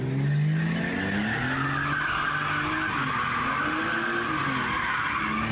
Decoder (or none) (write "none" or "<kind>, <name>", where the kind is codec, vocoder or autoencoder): none